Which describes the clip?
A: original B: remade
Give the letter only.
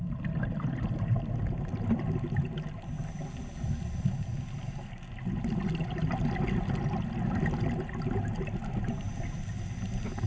A